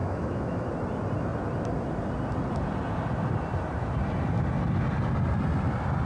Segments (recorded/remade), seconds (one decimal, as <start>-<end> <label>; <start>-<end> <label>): 0.0-0.7 remade; 0.7-6.0 recorded